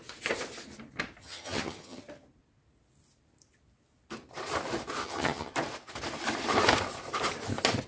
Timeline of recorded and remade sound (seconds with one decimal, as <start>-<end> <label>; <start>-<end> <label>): 0.0-1.2 recorded; 1.2-2.0 remade; 2.0-5.0 recorded; 5.0-5.5 remade; 5.5-7.9 recorded

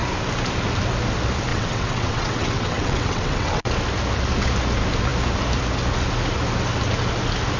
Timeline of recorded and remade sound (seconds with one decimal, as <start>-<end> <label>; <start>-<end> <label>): 0.0-1.5 recorded; 1.5-3.7 remade; 3.7-7.6 recorded

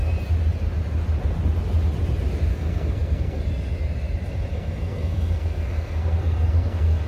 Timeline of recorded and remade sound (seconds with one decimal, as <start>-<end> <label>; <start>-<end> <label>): 0.0-2.5 recorded; 2.5-3.4 remade; 3.4-4.5 recorded; 4.5-7.1 remade

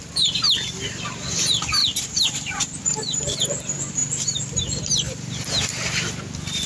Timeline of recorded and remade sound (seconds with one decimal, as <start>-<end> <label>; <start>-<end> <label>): 0.0-1.8 recorded; 1.8-2.8 remade; 2.8-4.0 recorded; 4.0-4.8 remade; 4.8-6.7 recorded

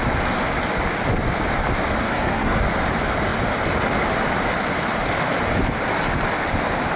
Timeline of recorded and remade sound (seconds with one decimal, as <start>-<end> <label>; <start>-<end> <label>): 0.0-2.0 recorded; 2.0-2.6 remade; 2.6-7.0 recorded